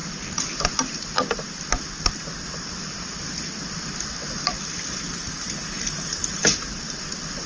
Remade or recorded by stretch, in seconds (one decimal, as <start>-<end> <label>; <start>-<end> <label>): 0.0-7.5 recorded